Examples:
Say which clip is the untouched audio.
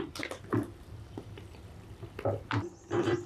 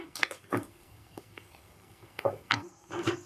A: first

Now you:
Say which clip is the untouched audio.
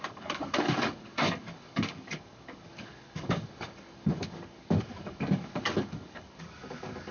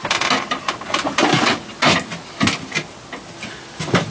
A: second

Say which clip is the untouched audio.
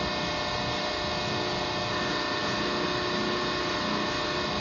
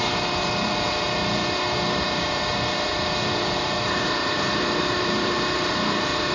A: first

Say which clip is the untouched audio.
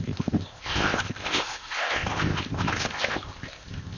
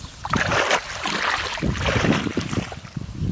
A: second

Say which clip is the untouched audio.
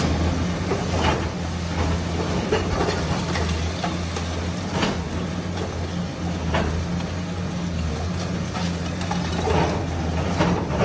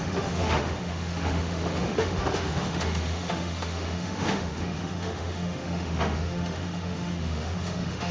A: first